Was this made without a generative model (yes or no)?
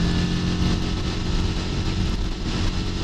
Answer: yes